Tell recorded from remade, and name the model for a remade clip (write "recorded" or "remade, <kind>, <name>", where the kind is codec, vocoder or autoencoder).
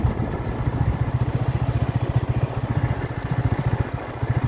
remade, vocoder, BigVGAN v2